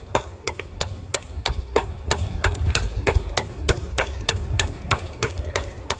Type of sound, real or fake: fake